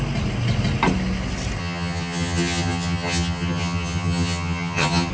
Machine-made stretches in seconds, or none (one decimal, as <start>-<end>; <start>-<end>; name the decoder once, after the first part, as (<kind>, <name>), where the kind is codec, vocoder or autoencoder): 1.6-5.1 (vocoder, HiFi-GAN)